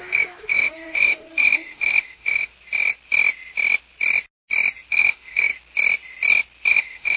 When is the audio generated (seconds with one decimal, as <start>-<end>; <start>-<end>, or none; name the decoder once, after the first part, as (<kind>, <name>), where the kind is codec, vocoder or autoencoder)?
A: 0.0-2.5 (autoencoder, DAC-VAE); 4.9-5.5; 6.7-7.2